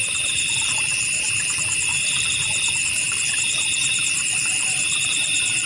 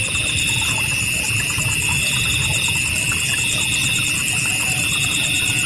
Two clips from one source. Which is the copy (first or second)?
first